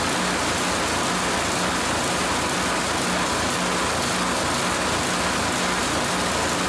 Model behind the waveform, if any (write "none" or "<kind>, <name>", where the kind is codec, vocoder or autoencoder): none